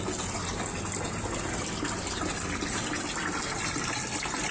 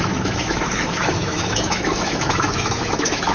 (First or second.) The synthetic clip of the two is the second